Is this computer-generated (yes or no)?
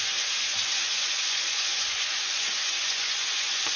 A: yes